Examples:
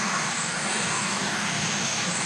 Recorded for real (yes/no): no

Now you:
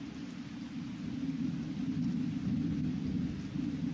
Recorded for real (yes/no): yes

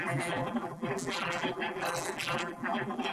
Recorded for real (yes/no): no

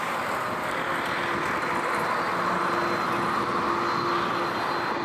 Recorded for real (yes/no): yes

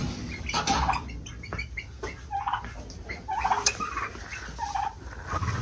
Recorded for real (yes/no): yes